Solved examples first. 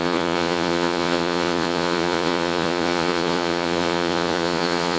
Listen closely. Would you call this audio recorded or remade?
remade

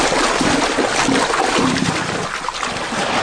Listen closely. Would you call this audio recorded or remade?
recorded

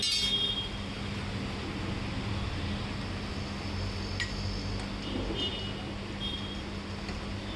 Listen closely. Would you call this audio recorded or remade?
recorded